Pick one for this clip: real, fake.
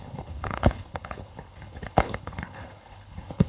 fake